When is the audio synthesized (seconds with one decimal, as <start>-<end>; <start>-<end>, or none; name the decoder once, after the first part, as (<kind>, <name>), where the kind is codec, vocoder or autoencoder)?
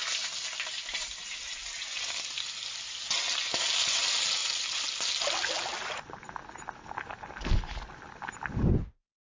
none